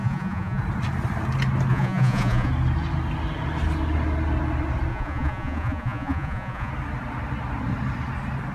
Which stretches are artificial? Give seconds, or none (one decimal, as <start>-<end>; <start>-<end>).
0.0-0.6; 1.7-2.5; 4.9-6.7